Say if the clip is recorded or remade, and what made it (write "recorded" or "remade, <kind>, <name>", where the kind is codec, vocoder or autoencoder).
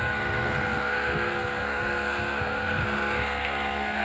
remade, codec, SNAC